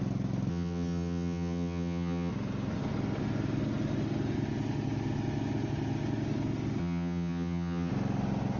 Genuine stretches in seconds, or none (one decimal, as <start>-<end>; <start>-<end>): 0.0-0.5; 2.3-6.8; 7.9-8.6